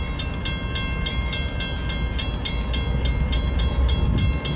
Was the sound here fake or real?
real